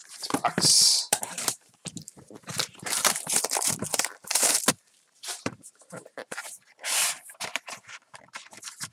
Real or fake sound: fake